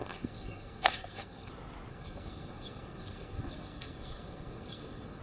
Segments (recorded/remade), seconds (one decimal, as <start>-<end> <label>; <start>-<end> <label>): 0.0-1.5 remade; 1.5-1.9 recorded; 1.9-5.2 remade